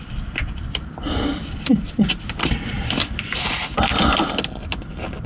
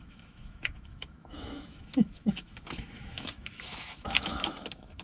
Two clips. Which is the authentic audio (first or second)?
first